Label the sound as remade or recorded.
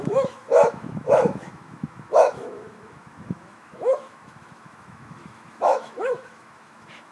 remade